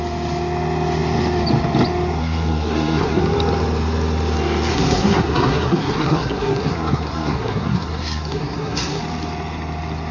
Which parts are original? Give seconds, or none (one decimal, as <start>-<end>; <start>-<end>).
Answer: 0.0-2.2; 3.2-4.7; 9.0-10.1